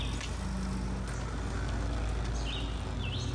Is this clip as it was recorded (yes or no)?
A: yes